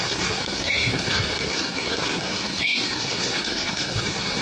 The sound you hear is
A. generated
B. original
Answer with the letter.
A